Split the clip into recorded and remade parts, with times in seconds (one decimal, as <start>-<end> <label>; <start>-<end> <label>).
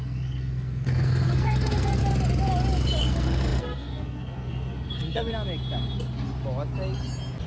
0.0-2.0 remade; 2.0-3.0 recorded; 3.0-5.3 remade; 5.3-7.5 recorded